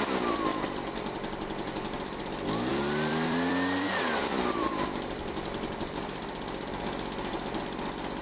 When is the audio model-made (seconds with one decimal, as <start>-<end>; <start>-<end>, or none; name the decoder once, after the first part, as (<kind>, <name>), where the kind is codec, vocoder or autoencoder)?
0.5-2.2 (vocoder, BigVGAN v2); 2.7-7.6